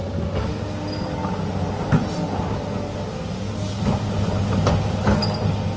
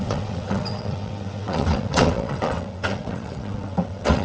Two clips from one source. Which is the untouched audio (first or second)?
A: first